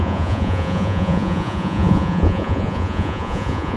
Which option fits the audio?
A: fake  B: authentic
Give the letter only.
A